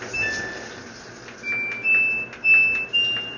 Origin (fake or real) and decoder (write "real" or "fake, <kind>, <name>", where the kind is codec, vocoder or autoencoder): real